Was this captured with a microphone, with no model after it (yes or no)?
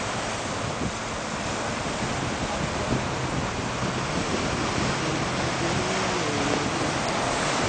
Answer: yes